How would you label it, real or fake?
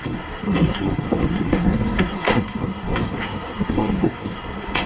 fake